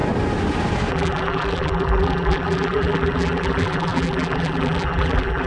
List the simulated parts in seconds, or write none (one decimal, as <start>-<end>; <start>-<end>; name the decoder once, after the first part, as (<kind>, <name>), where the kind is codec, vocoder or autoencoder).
0.9-5.5 (vocoder, BigVGAN v2)